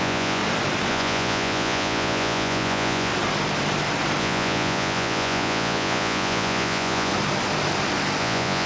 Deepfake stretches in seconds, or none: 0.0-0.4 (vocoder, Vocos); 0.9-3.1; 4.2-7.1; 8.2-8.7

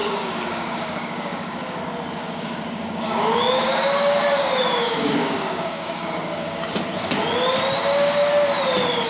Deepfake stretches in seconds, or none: 0.0-1.8 (codec, DAC); 2.2-6.8; 7.8-8.3